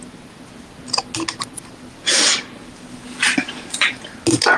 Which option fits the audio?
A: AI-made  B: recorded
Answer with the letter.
B